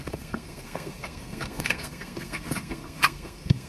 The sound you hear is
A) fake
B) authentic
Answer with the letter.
A